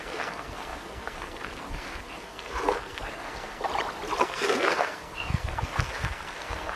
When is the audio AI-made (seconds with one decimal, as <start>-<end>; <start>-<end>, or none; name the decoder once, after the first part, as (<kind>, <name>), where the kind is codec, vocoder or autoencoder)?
0.0-3.7 (codec, SNAC); 4.2-6.8